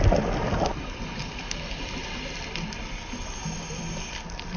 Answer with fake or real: real